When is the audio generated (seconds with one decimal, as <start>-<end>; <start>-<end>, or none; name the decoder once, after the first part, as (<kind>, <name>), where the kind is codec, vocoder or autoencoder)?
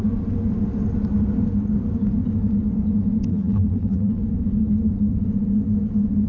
3.3-4.2 (vocoder, BigVGAN v2)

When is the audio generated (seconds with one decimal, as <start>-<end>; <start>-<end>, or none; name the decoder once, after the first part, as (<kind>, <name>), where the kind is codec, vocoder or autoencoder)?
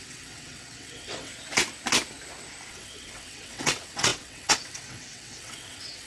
0.0-1.3 (vocoder, WaveNeXt); 2.7-6.1